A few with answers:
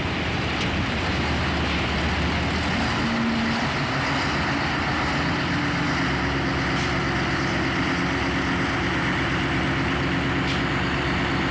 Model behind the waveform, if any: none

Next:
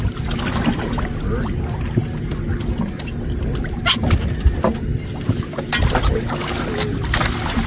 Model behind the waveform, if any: none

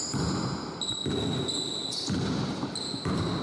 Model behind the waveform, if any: none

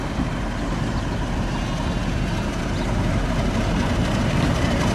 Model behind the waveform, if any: none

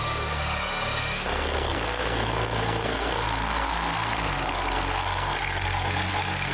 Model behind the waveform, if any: codec, SNAC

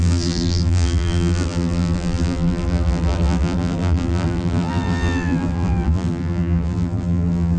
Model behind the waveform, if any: vocoder, BigVGAN v2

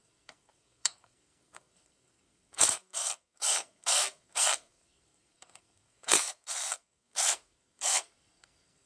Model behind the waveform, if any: codec, SNAC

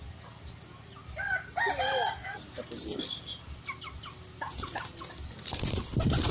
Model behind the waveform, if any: none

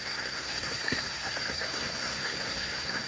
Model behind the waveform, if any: codec, SNAC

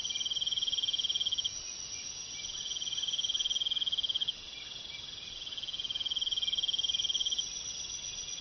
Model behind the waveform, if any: none